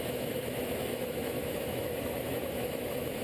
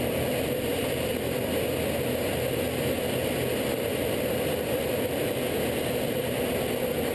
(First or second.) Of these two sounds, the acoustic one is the second